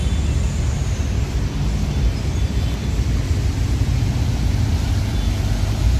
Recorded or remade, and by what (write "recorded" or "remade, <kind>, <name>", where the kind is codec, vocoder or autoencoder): recorded